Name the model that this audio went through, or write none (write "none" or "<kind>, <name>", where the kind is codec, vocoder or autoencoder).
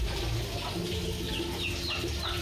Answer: none